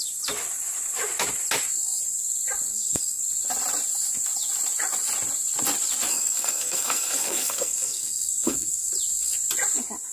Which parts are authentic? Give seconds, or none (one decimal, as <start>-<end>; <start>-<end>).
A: 0.0-2.7; 3.2-6.1; 8.9-10.1